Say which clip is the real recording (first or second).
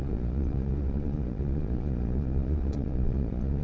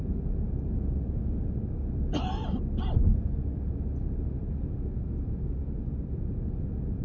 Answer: second